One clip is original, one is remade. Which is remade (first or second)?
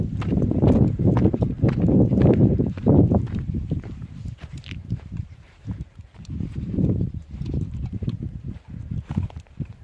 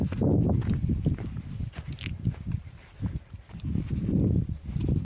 first